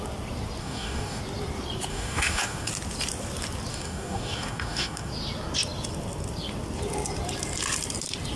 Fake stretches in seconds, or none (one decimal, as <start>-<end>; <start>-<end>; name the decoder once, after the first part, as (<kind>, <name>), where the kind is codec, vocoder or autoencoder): 0.6-1.2 (codec, DAC); 1.9-2.7; 3.7-5.1